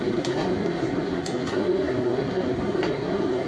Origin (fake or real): fake